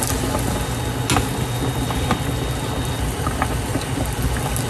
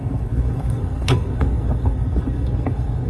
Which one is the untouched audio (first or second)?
first